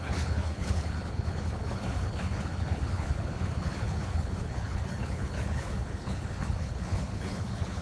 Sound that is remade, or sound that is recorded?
remade